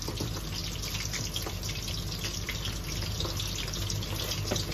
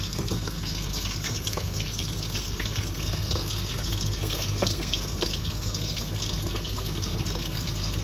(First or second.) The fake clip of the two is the second